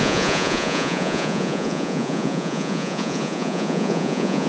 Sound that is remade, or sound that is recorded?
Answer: remade